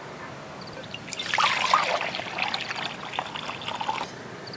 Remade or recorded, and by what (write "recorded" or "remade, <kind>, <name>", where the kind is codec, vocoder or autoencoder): recorded